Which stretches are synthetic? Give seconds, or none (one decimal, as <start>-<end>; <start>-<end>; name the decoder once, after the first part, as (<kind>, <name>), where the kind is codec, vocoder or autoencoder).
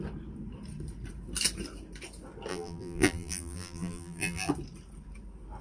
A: 2.5-4.5 (vocoder, BigVGAN v2)